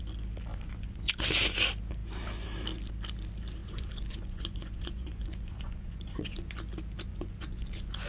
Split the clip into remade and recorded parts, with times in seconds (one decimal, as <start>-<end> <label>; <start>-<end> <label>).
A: 0.0-0.5 recorded; 0.5-1.1 remade; 1.1-3.6 recorded; 3.6-6.5 remade; 6.5-7.1 recorded; 7.1-8.1 remade